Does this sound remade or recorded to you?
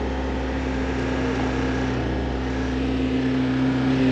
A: recorded